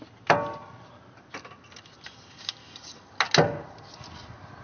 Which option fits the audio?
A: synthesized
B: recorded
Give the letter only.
B